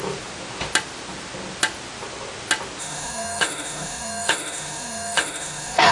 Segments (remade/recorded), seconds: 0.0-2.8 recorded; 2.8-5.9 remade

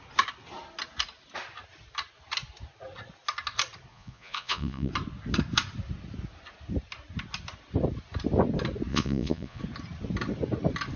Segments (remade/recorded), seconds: 0.0-3.9 recorded; 3.9-4.9 remade; 4.9-8.9 recorded; 8.9-9.6 remade; 9.6-11.0 recorded

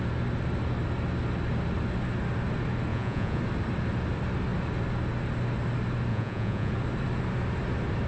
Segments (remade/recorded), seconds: 0.0-2.9 recorded; 2.9-3.4 remade; 3.4-6.1 recorded; 6.1-6.7 remade; 6.7-8.1 recorded

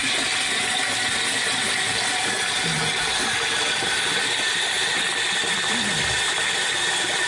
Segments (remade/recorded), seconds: 0.0-7.3 recorded